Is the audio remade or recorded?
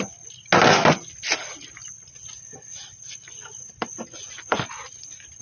recorded